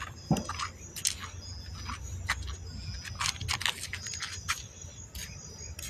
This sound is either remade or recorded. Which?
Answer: recorded